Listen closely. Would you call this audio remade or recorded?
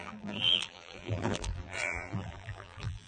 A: remade